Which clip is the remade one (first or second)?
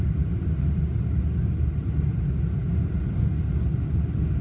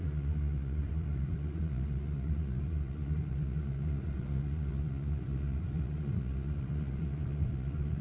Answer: second